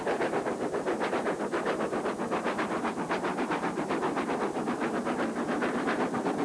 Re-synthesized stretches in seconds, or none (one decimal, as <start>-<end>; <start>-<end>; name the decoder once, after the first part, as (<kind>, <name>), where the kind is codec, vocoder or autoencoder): none